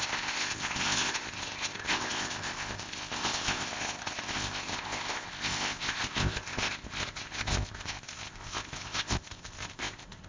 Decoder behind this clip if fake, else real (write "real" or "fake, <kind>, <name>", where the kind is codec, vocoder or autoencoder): fake, codec, ZipCodec